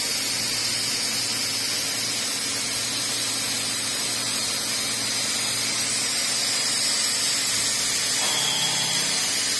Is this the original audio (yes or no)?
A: yes